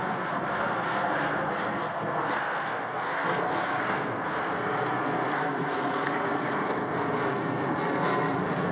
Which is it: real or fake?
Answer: fake